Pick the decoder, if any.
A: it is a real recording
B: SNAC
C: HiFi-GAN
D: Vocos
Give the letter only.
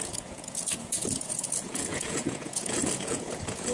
D